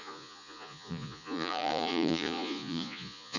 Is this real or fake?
fake